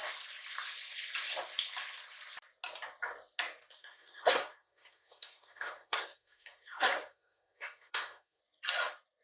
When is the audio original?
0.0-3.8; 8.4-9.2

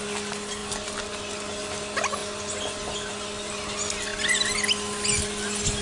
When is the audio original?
0.0-5.8

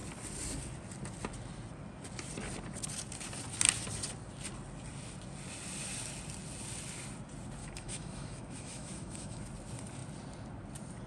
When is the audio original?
0.0-7.6; 9.5-11.1

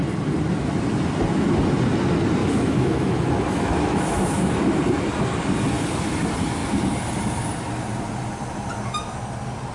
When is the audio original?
0.0-2.4; 4.6-9.7

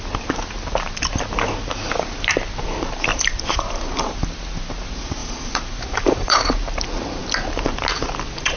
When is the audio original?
0.0-3.1; 4.2-5.2; 6.4-8.6